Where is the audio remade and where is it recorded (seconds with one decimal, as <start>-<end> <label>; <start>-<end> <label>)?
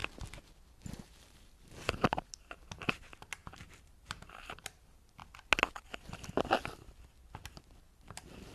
0.0-0.9 recorded; 0.9-5.2 remade; 5.2-7.8 recorded; 7.8-8.5 remade